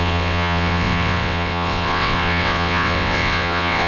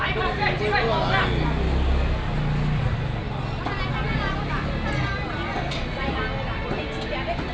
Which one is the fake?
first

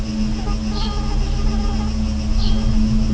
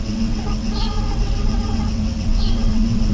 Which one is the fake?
second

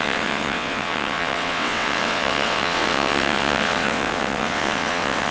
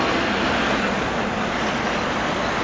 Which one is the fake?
first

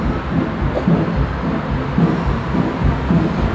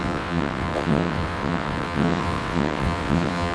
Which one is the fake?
second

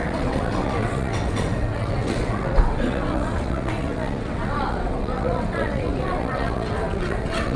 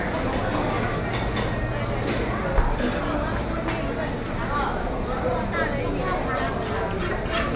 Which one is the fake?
first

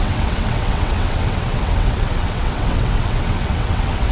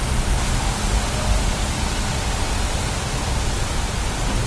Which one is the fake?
first